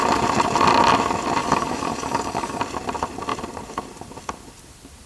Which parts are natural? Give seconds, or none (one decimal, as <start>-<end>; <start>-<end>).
0.0-1.4; 2.6-5.1

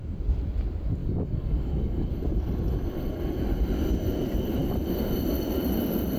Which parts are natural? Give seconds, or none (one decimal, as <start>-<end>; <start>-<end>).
0.0-1.0; 2.1-6.2